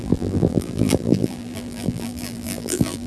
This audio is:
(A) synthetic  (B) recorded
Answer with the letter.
A